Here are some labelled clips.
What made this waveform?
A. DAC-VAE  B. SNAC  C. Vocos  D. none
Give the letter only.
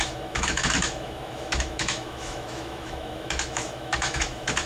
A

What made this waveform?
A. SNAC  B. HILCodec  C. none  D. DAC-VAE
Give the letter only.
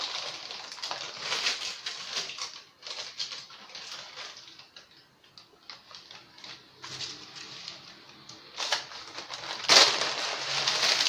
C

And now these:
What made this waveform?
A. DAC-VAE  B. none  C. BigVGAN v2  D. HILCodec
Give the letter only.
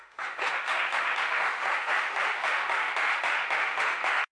A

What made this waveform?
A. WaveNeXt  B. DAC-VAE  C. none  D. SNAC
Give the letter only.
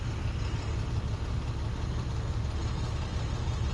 C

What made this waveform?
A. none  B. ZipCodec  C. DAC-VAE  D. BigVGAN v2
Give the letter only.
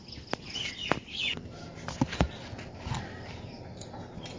A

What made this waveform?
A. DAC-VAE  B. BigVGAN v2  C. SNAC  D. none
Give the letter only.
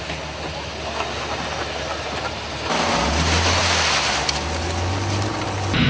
D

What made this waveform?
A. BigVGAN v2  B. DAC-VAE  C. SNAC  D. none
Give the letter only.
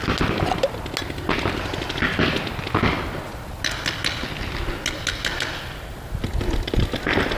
D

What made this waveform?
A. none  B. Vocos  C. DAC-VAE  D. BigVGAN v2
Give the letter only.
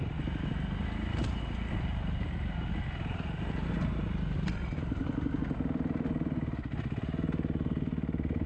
A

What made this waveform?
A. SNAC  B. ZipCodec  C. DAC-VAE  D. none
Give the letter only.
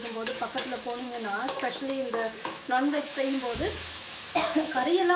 C